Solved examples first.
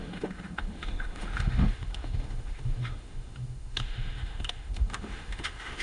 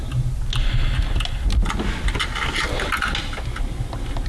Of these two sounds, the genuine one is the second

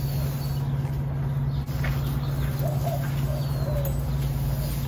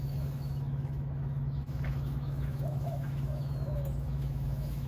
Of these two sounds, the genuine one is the first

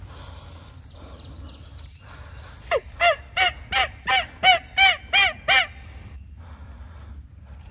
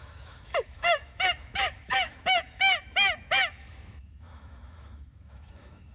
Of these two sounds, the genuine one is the first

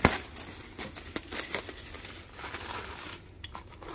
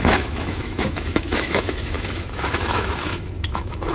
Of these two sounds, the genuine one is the first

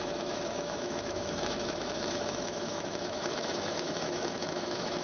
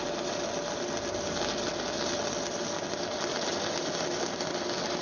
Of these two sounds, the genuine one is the second